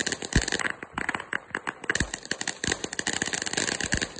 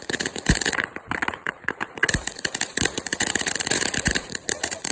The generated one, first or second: second